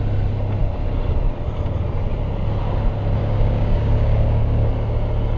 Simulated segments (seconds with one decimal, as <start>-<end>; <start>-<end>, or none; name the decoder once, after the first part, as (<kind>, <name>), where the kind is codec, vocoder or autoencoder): 3.2-4.7 (codec, DAC)